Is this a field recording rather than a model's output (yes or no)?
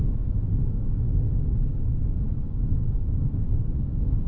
no